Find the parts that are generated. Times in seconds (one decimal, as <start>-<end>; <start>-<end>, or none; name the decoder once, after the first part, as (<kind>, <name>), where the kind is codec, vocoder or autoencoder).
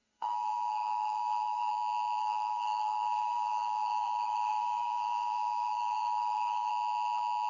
0.0-1.7 (codec, SNAC); 2.2-6.7